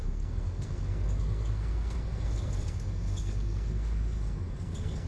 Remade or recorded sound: remade